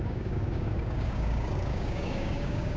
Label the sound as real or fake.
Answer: fake